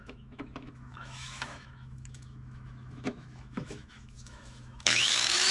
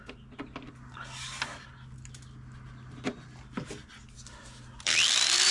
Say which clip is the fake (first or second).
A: first